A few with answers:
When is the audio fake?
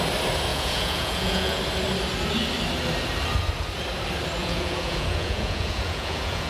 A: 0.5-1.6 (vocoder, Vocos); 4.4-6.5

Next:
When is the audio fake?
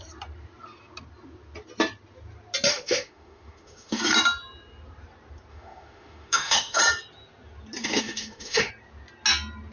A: 2.7-4.0 (autoencoder, DAC-VAE); 5.5-6.8; 7.8-8.7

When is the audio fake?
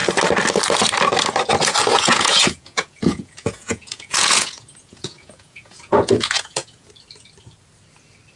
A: 1.9-6.9 (vocoder, Vocos)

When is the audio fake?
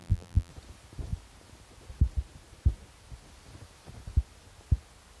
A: 0.0-0.5 (vocoder, BigVGAN v2)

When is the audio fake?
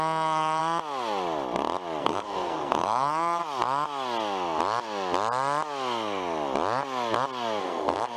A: 0.0-0.6 (codec, SNAC); 2.0-3.4; 7.6-8.2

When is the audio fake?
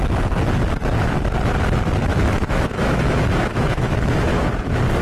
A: 2.0-4.5 (autoencoder, DAC-VAE)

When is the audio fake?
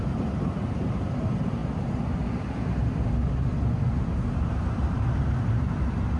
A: 0.0-1.6 (vocoder, BigVGAN v2); 2.3-2.8; 4.5-6.2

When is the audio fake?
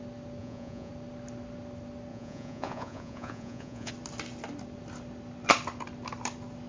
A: 0.4-0.9 (vocoder, Vocos); 2.1-3.9